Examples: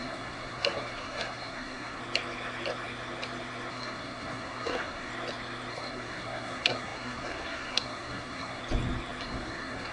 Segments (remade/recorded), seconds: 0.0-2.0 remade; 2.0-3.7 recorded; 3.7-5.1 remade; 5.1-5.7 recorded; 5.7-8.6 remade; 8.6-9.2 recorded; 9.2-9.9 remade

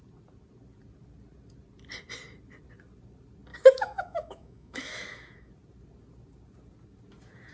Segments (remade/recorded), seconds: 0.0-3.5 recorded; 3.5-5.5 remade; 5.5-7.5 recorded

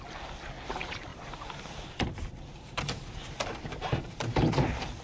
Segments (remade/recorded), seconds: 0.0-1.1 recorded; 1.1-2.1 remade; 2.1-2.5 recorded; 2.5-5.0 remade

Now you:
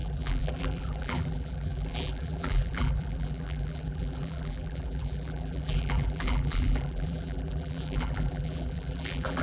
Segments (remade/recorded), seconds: 0.0-9.4 remade